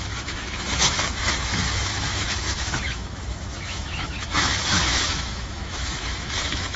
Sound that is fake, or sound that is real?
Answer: fake